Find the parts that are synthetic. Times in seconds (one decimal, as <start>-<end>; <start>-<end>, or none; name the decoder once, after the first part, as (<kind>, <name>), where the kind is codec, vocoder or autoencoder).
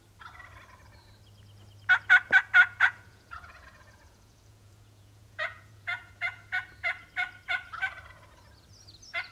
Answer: 2.6-6.6 (vocoder, Vocos)